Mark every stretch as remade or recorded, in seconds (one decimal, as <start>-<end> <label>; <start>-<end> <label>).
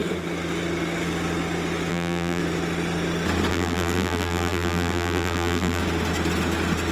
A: 0.0-1.9 recorded; 1.9-2.4 remade; 2.4-3.5 recorded; 3.5-5.8 remade; 5.8-6.9 recorded